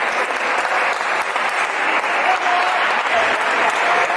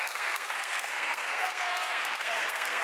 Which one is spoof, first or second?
second